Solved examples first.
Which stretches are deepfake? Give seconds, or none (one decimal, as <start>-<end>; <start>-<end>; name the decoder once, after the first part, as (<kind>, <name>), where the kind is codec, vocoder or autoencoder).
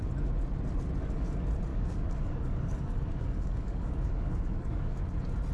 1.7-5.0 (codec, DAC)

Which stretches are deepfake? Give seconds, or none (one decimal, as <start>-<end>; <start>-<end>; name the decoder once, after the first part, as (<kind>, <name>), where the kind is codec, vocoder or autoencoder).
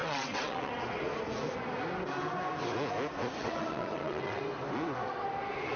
0.0-0.7 (vocoder, WaveNeXt); 3.4-4.4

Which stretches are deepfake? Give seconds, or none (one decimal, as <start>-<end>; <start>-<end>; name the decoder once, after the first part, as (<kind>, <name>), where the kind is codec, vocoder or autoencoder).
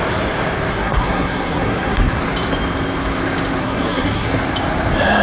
0.7-2.2 (codec, SNAC); 3.6-4.3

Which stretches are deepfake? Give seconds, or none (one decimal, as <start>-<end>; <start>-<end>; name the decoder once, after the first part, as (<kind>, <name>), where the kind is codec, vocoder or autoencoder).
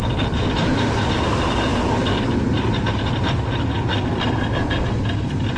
none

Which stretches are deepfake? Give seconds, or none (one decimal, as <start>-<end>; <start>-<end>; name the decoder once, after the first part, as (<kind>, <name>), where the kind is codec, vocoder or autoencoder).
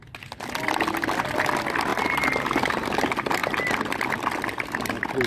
none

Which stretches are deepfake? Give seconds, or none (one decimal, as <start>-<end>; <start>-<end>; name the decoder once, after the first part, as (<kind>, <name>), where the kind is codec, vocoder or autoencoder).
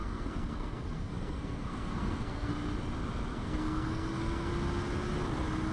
0.0-2.5 (codec, SNAC); 3.3-4.5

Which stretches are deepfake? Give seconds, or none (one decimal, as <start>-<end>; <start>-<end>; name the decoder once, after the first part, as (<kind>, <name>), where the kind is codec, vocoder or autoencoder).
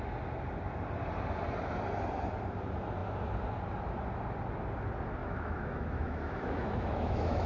5.2-7.5 (autoencoder, DAC-VAE)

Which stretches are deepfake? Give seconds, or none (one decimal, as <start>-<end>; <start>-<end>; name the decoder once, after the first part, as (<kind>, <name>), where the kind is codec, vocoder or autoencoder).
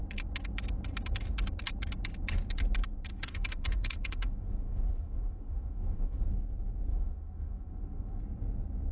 3.1-6.3 (autoencoder, DAC-VAE); 6.9-8.2